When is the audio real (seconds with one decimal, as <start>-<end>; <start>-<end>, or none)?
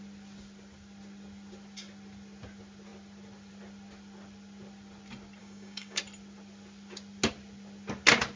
0.0-5.4; 6.0-8.4